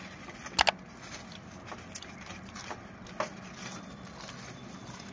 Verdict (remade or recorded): recorded